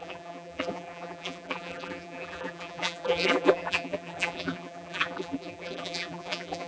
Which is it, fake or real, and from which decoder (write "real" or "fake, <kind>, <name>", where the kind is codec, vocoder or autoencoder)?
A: fake, vocoder, BigVGAN v2